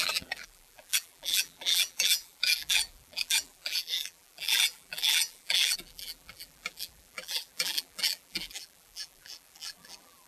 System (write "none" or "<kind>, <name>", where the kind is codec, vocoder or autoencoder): vocoder, BigVGAN v2